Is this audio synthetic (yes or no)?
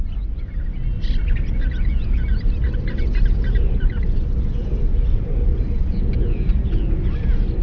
no